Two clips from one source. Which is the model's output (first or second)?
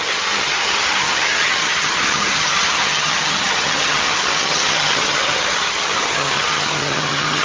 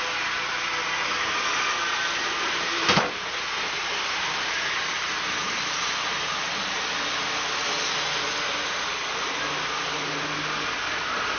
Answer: first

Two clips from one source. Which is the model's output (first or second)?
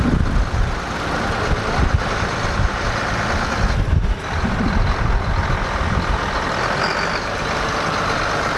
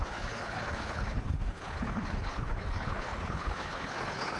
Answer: second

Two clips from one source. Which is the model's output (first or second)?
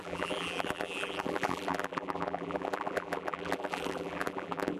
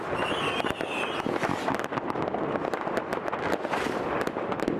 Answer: first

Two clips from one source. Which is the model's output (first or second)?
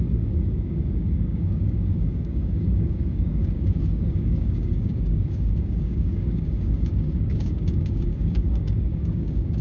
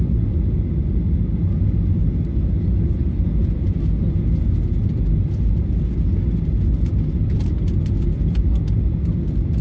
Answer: first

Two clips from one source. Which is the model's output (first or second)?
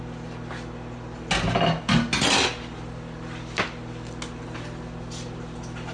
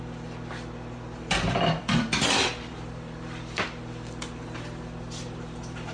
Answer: second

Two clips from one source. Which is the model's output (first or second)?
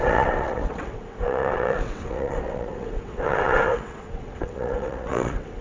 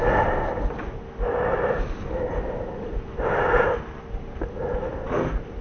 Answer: first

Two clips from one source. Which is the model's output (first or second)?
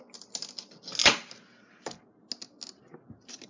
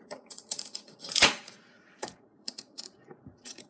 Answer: second